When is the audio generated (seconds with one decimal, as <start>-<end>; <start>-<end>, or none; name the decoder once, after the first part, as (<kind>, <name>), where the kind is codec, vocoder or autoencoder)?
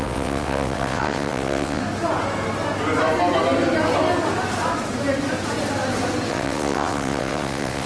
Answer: 0.0-1.8 (vocoder, WaveNeXt); 6.3-7.9